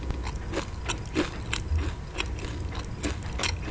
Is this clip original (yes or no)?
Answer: yes